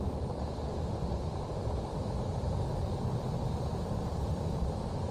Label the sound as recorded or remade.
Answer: remade